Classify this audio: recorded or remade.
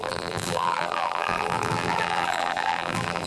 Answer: remade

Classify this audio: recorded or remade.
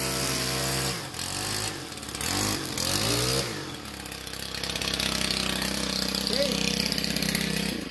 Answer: recorded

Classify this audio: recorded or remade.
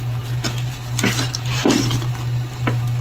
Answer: recorded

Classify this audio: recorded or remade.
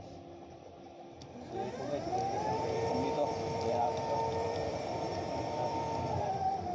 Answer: remade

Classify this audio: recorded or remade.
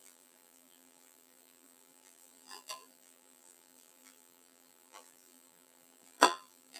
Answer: remade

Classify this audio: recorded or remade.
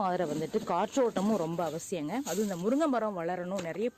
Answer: recorded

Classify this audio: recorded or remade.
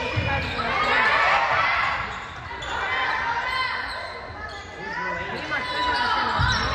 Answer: recorded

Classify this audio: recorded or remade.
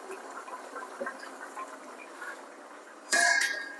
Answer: remade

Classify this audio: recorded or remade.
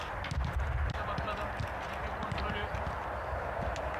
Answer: recorded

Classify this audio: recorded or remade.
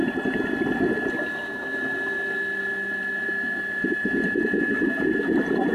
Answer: recorded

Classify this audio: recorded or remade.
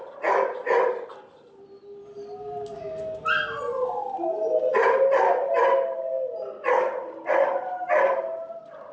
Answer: recorded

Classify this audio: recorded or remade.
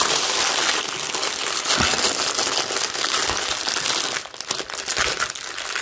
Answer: recorded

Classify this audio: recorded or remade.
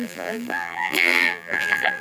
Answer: remade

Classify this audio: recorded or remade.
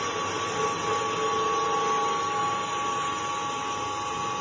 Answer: recorded